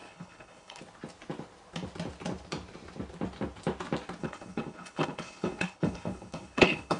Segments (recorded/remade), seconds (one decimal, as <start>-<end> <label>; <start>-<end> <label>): 0.0-0.8 remade; 0.8-4.2 recorded; 4.2-7.0 remade